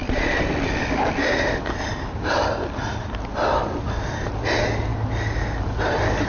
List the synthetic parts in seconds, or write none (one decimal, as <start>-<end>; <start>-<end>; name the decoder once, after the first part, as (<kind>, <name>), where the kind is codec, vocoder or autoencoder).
0.0-0.5 (vocoder, BigVGAN v2); 1.9-2.4